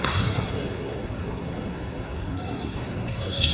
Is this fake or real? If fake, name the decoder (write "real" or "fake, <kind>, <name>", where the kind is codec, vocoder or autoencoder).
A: fake, codec, SNAC